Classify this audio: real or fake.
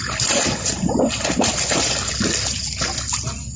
real